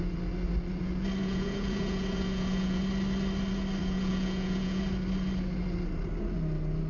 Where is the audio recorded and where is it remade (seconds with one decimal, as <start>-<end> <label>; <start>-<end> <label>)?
0.0-1.2 recorded; 1.2-2.8 remade; 2.8-3.8 recorded; 3.8-4.8 remade; 4.8-6.9 recorded